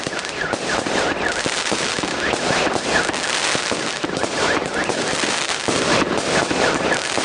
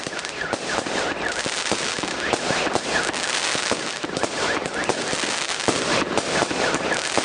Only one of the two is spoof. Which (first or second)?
first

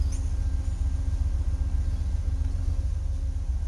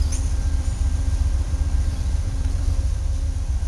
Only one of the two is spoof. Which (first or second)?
second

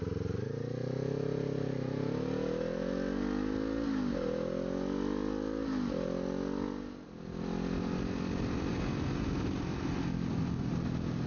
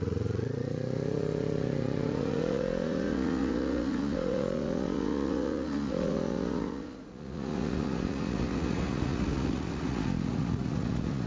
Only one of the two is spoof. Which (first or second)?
second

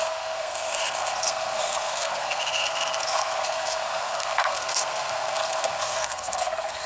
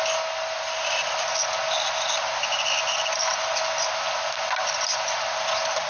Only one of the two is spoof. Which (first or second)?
first